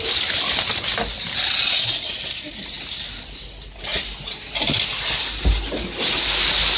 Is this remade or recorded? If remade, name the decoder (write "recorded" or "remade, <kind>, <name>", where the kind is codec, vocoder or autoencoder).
recorded